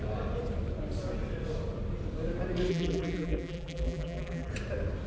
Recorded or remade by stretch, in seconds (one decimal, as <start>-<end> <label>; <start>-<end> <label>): 0.0-2.7 recorded; 2.7-4.5 remade; 4.5-5.1 recorded